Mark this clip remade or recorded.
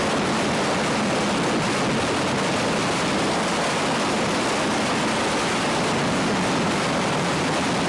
recorded